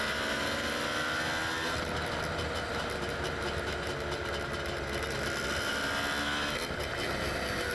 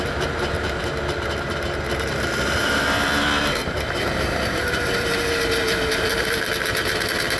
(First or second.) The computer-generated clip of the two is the second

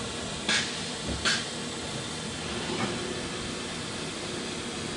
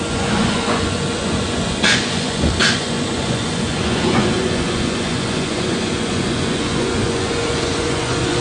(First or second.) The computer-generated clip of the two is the second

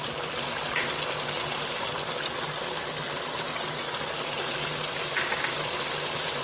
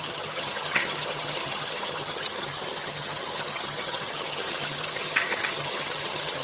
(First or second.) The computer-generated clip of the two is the second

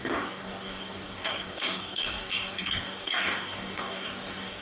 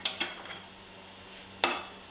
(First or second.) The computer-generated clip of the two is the first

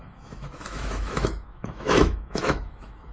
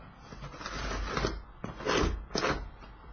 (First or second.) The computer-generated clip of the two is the first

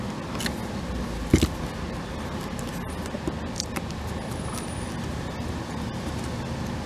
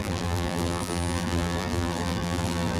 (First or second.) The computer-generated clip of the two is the second